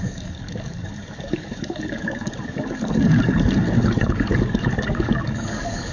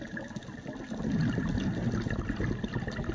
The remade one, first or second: first